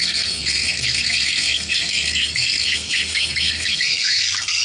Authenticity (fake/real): fake